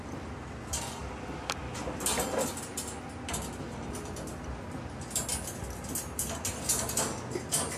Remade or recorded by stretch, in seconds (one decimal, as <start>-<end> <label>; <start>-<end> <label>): 0.0-7.8 recorded